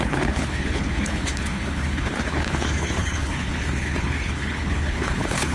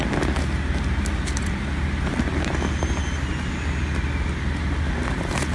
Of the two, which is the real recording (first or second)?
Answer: second